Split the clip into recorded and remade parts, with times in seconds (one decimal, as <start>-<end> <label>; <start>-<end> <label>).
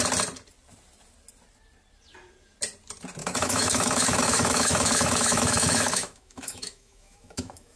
0.0-3.2 recorded; 3.2-7.8 remade